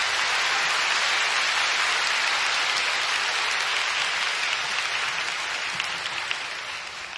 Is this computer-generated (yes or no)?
no